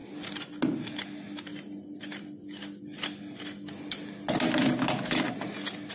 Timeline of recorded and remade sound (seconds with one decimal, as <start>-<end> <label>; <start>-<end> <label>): 0.0-5.9 recorded

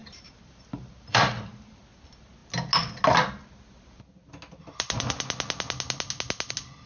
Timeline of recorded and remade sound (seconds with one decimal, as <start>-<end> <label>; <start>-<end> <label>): 0.0-1.8 remade; 1.8-6.9 recorded

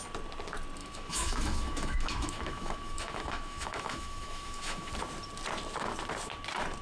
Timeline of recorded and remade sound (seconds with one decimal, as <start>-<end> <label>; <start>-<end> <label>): 0.0-0.8 recorded; 0.8-4.9 remade; 4.9-6.8 recorded

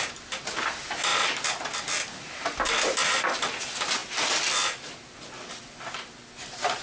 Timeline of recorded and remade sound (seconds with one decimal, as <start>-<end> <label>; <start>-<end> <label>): 0.0-6.8 recorded